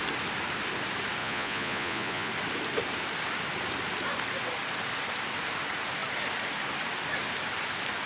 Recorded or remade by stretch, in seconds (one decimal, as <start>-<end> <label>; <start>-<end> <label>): 0.0-1.2 recorded; 1.2-2.3 remade; 2.3-8.1 recorded